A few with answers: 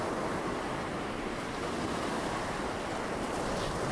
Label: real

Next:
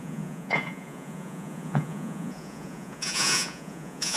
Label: fake